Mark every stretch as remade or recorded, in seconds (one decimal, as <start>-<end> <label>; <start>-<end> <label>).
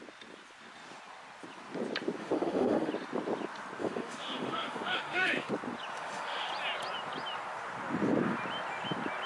0.0-2.2 recorded; 2.2-2.9 remade; 2.9-3.8 recorded; 3.8-5.5 remade; 5.5-5.9 recorded; 5.9-6.5 remade; 6.5-9.3 recorded